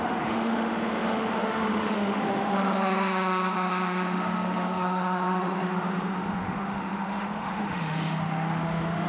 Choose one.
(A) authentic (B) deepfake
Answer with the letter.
B